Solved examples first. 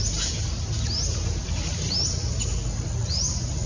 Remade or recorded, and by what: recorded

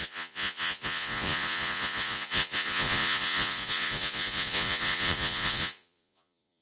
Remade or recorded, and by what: remade, vocoder, Vocos